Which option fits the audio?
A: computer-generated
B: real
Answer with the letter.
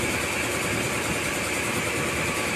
B